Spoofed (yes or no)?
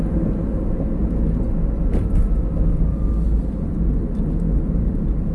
no